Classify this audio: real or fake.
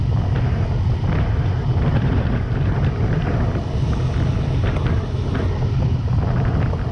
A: real